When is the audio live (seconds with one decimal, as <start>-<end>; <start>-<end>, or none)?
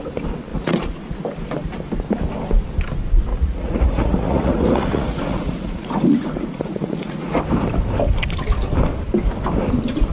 0.0-0.5; 1.2-3.3; 7.4-10.1